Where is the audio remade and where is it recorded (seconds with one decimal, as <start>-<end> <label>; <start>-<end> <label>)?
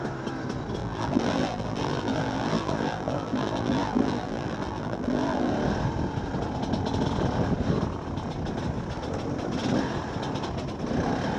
0.0-0.8 recorded; 0.8-5.5 remade; 5.5-11.4 recorded